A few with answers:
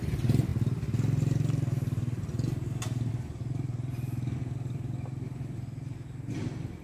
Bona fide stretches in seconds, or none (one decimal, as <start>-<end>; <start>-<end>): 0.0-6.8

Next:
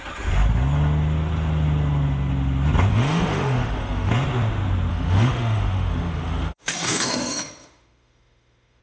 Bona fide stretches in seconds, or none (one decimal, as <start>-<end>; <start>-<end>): 0.0-2.9; 4.1-4.9

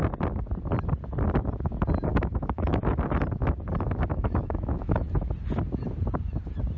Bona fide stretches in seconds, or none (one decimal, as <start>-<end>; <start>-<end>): 0.0-2.1; 2.8-4.1; 5.3-6.8